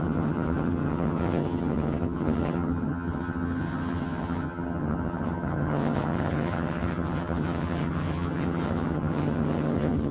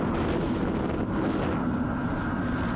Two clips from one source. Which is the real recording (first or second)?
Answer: second